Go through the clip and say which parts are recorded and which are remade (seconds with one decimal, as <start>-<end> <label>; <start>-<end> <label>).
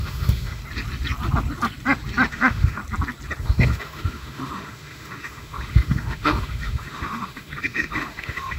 0.0-0.6 remade; 0.6-2.3 recorded; 2.3-2.8 remade; 2.8-3.4 recorded; 3.4-8.6 remade